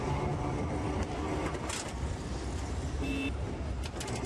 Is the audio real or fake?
real